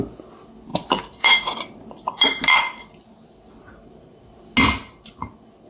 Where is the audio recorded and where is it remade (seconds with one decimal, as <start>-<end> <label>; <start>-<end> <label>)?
0.0-0.7 recorded; 0.7-4.1 remade; 4.1-5.7 recorded